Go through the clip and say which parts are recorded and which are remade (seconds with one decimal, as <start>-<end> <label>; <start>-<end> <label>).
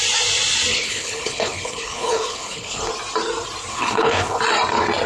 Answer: 0.0-0.7 recorded; 0.7-2.9 remade; 2.9-3.7 recorded; 3.7-4.4 remade; 4.4-5.1 recorded